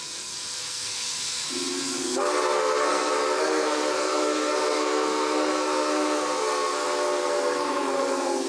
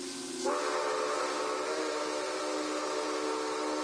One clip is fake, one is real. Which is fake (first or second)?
first